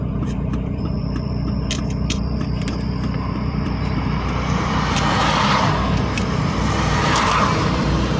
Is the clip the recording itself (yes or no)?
no